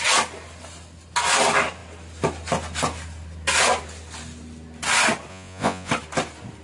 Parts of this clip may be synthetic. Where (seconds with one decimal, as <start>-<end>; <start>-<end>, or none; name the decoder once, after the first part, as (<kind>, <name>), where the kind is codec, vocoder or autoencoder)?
5.3-5.9 (vocoder, Vocos)